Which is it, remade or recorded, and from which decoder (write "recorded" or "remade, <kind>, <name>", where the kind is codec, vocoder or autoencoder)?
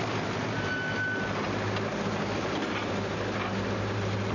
recorded